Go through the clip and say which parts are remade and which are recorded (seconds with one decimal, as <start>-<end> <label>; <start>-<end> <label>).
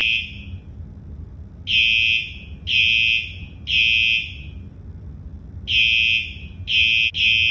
0.0-7.5 recorded